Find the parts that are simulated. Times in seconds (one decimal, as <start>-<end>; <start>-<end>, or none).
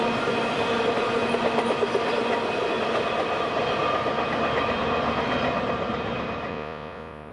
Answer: 6.5-7.3